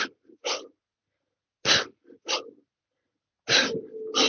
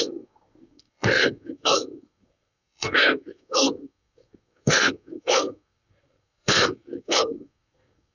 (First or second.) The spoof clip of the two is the second